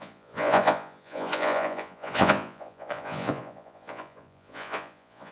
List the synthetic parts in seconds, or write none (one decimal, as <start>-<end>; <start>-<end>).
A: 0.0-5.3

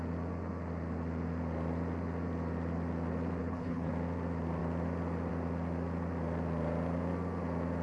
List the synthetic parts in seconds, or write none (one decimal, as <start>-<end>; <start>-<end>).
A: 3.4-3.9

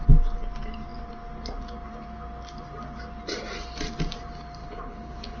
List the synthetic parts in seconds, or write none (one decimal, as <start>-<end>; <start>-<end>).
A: 4.6-5.4

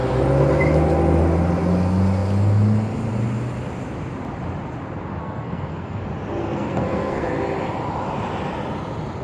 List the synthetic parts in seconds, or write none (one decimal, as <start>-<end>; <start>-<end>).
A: 5.2-6.0; 6.4-7.3

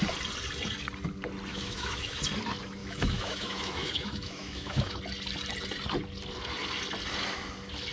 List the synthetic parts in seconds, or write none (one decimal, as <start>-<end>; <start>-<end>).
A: 1.5-2.2; 2.8-5.0